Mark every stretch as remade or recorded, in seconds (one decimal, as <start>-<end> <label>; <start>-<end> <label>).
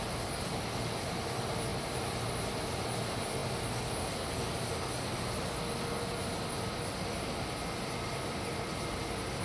0.0-9.4 recorded